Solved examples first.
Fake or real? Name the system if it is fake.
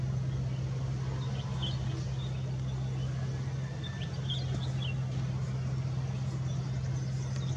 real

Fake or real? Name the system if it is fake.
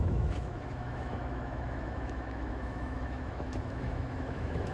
fake, autoencoder, DAC-VAE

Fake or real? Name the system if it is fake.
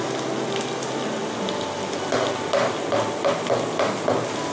real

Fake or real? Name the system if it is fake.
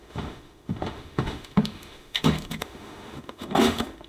fake, autoencoder, DAC-VAE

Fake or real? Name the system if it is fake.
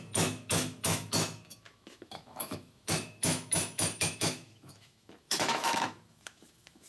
fake, autoencoder, DAC-VAE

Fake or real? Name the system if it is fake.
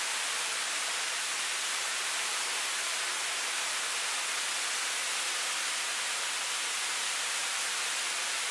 real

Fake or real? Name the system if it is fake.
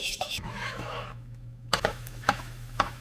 fake, autoencoder, DAC-VAE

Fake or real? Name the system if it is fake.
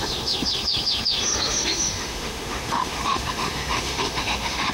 fake, autoencoder, DAC-VAE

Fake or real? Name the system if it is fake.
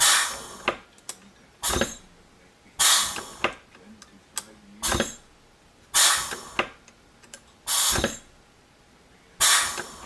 real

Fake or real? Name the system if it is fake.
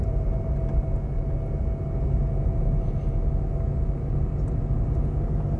real